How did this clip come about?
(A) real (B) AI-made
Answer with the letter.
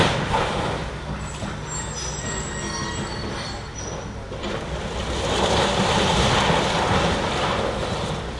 A